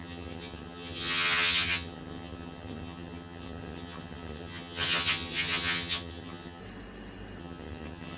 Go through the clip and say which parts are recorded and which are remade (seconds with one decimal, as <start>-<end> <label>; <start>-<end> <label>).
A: 0.0-6.6 remade; 6.6-7.4 recorded; 7.4-8.2 remade